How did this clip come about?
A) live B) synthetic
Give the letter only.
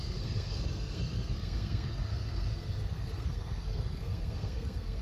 B